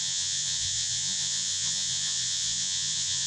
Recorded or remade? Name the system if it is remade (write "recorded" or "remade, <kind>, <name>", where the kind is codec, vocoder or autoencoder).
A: remade, vocoder, Vocos